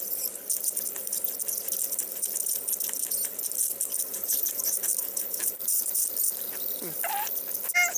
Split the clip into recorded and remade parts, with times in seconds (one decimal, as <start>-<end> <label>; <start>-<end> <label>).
0.0-4.1 recorded; 4.1-7.1 remade; 7.1-8.0 recorded